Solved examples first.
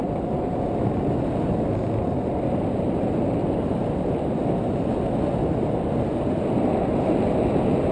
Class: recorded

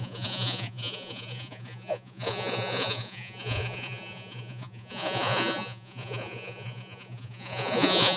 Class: remade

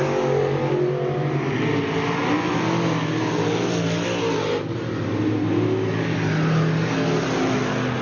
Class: recorded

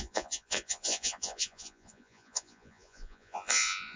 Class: remade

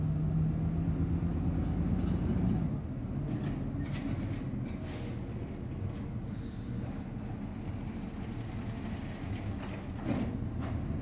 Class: recorded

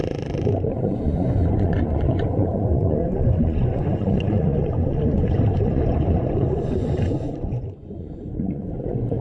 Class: remade